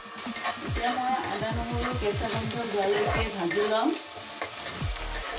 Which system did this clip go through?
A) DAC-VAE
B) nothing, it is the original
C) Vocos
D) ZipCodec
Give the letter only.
B